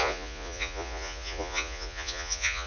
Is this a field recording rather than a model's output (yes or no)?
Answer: no